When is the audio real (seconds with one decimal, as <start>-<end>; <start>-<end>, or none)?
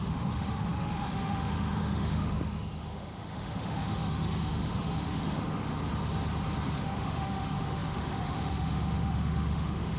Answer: 5.7-6.8